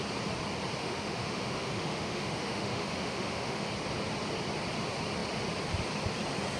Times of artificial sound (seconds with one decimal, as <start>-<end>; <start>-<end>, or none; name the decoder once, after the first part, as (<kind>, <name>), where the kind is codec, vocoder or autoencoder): 0.8-3.7 (autoencoder, DAC-VAE)